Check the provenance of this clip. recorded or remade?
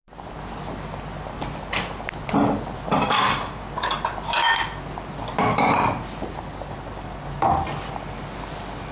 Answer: recorded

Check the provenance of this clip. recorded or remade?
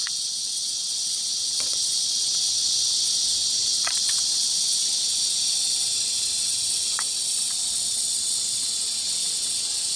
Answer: remade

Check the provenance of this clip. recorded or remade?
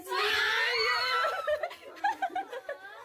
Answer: recorded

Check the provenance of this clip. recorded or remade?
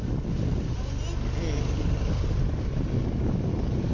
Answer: recorded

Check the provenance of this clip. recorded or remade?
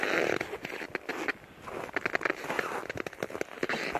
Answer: recorded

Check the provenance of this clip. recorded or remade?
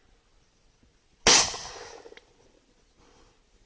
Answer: recorded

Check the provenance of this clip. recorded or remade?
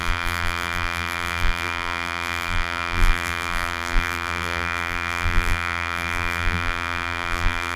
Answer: remade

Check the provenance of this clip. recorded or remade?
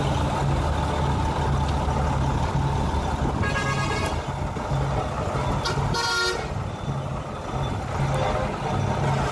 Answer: recorded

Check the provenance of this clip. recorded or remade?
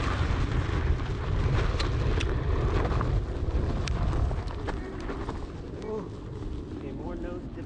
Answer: recorded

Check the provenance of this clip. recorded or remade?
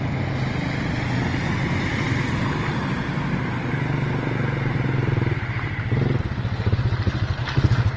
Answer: remade